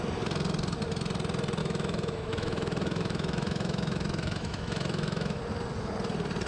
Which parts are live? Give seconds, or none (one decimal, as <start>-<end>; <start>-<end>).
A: 0.0-1.6; 5.4-6.5